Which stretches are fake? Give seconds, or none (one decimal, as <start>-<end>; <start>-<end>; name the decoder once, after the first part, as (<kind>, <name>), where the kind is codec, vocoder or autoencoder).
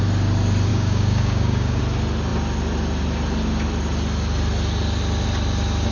0.7-1.8 (codec, DAC)